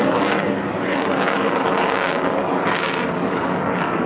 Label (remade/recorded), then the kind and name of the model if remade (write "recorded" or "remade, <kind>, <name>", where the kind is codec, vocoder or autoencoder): remade, codec, DAC